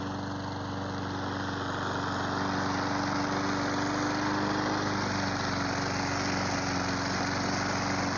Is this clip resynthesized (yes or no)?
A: no